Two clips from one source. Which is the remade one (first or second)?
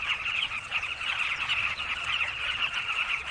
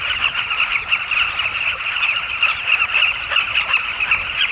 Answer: first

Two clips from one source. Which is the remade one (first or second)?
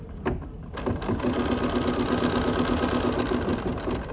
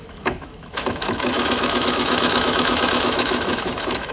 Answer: second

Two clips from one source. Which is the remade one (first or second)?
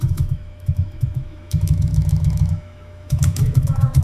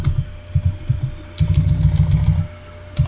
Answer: first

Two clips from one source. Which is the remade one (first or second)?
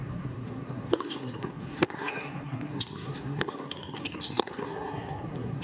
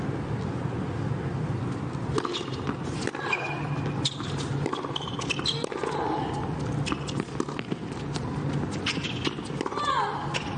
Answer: first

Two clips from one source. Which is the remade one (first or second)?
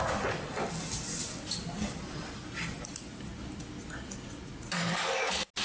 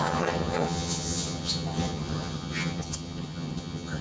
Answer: second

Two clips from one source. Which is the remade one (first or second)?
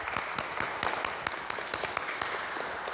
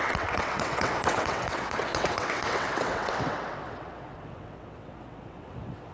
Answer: second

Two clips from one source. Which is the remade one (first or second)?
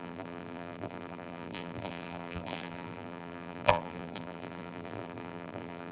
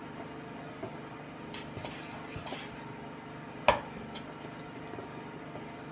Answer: first